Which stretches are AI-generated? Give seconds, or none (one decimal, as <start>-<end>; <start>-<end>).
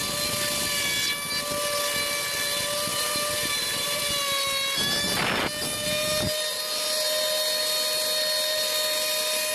2.9-4.0